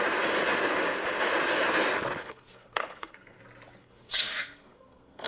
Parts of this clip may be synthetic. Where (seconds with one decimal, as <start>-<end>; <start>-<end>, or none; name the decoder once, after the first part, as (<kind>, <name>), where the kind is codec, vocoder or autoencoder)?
2.2-3.4 (codec, SNAC); 3.8-5.3